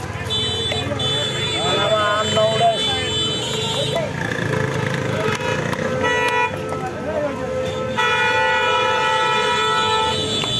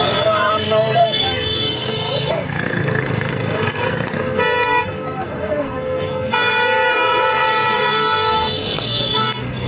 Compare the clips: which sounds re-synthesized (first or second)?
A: second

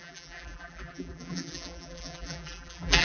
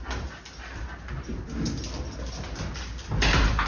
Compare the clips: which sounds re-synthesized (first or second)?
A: first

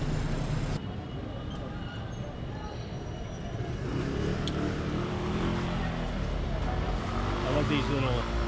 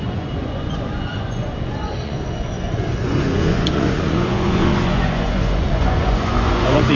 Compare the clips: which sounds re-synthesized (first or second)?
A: second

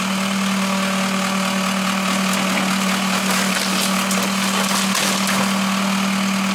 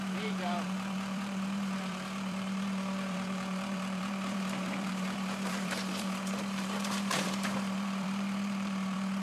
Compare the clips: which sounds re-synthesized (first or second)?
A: second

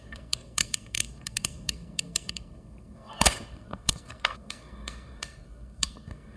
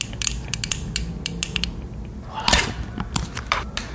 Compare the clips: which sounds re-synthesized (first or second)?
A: first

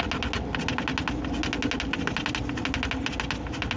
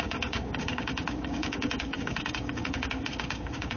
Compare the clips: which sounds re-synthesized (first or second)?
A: second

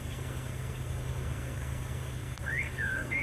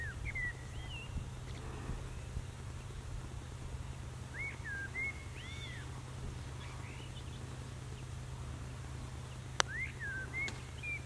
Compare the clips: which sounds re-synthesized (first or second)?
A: first